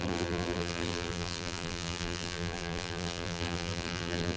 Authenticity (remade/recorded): remade